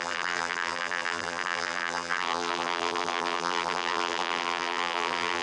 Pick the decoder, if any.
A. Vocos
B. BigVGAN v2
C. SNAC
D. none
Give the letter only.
B